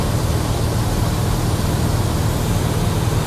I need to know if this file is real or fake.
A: real